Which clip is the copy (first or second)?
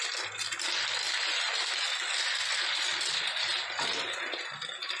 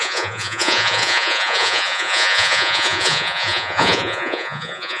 second